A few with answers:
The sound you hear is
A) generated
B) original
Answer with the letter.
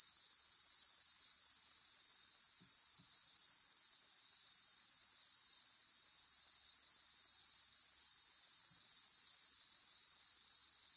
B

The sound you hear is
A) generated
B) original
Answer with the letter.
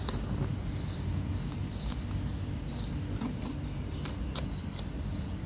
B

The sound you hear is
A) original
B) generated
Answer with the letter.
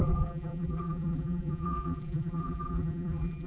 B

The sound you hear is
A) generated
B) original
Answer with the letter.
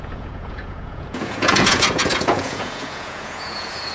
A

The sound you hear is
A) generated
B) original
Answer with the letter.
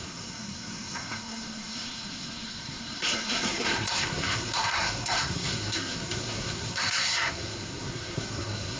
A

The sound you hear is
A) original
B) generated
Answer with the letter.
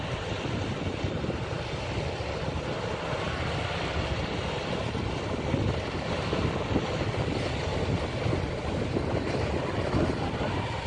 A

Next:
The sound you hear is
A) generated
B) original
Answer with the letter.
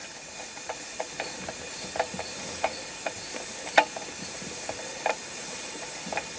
B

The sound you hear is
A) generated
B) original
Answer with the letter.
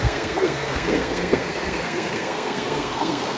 A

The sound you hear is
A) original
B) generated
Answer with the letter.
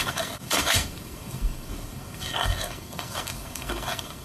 B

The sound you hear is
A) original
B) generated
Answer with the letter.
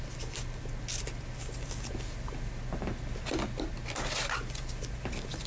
A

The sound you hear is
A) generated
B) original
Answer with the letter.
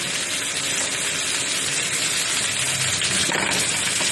B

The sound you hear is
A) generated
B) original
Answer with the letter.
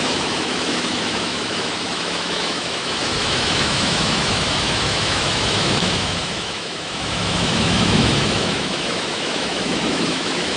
A